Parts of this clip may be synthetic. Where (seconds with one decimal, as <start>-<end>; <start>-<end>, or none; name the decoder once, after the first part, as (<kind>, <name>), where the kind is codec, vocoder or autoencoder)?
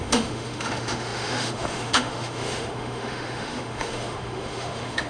0.0-5.1 (autoencoder, DAC-VAE)